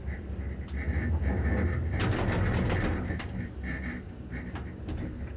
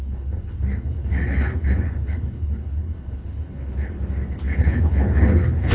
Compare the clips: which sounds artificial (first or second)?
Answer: second